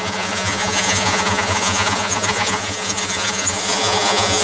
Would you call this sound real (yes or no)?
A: no